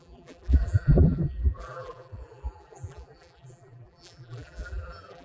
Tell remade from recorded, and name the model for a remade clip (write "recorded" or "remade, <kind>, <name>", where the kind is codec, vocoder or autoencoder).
remade, vocoder, BigVGAN v2